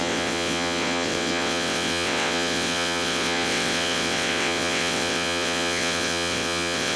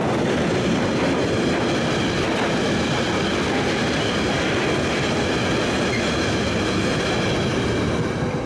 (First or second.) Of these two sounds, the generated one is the first